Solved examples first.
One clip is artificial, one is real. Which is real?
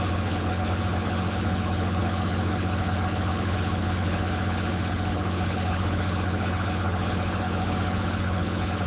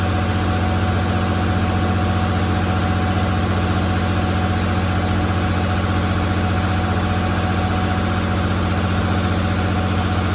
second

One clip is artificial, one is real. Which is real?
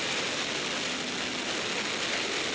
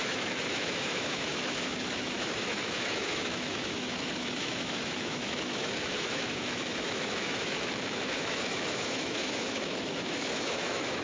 first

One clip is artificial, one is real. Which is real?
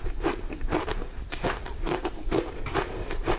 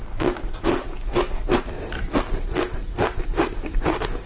second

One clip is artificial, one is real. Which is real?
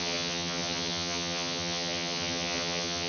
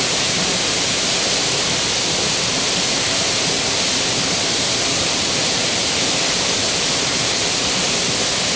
second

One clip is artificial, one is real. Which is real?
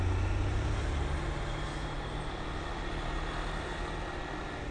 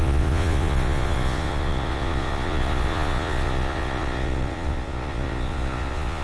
first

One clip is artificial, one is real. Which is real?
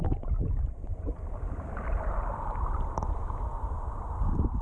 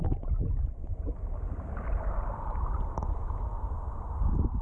second